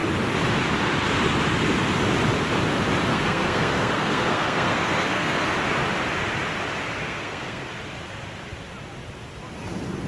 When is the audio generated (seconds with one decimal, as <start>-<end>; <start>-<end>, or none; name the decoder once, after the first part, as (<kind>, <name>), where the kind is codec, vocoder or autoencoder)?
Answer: 3.1-5.5 (codec, SNAC); 7.0-7.7